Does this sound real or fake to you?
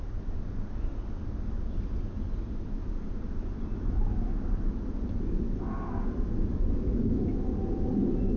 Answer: real